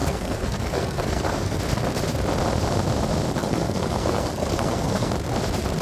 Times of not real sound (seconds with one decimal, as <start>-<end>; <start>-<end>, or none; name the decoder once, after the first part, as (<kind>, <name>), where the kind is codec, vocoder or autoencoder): 0.0-1.6 (codec, SNAC); 3.4-5.1